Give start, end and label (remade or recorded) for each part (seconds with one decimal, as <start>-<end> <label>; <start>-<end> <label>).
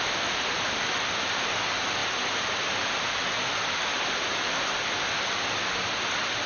0.0-6.5 recorded